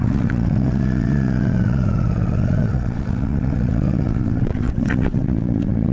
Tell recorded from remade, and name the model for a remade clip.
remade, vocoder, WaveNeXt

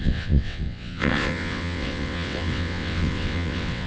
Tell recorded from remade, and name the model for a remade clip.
remade, vocoder, WaveNeXt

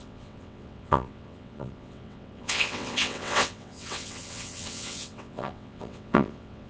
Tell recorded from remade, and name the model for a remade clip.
remade, vocoder, WaveNeXt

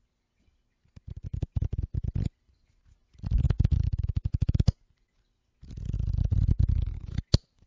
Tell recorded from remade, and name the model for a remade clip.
recorded